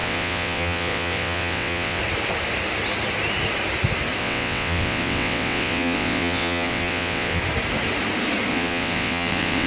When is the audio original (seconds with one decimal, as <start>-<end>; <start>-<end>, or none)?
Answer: 2.0-4.2; 7.4-8.5